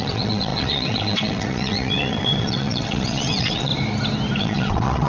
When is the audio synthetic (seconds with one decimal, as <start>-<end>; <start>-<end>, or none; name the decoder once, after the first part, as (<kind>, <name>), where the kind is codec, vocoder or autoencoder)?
0.0-3.7 (vocoder, WaveNeXt); 4.4-5.1